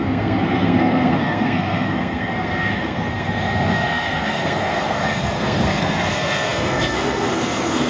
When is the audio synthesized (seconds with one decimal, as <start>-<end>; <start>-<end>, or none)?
0.0-7.9